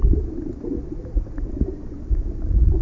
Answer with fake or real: real